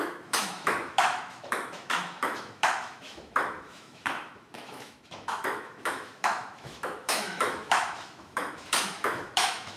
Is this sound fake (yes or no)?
yes